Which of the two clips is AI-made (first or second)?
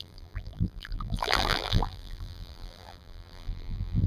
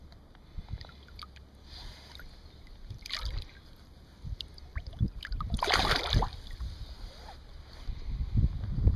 first